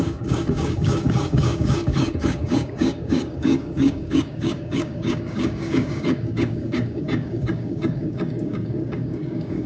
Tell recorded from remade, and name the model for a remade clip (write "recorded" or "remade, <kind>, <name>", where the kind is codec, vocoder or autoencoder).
remade, codec, DAC